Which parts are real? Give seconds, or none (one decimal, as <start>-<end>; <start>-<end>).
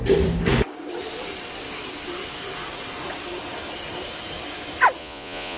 0.0-5.0